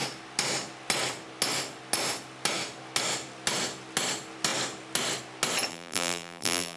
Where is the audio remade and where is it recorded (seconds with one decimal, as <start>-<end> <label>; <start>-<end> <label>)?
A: 0.0-5.7 recorded; 5.7-6.8 remade